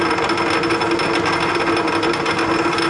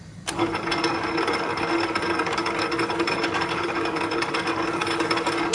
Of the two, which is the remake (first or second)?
second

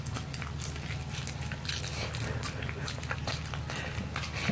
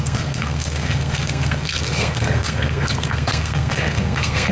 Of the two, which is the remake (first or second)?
second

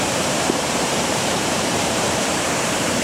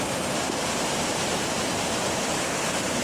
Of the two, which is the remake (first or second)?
first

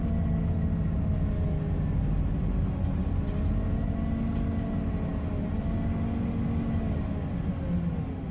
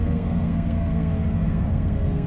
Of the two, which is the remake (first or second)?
second